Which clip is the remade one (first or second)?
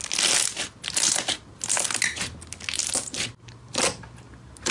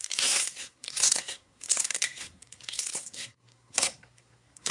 second